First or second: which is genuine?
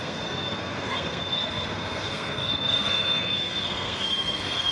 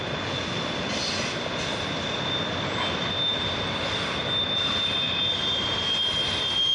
second